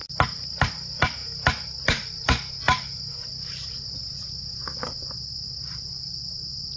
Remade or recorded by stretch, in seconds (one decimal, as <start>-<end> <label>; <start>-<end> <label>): 0.0-6.8 recorded